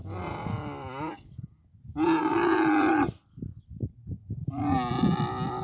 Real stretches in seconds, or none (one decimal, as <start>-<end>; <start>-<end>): 0.0-5.6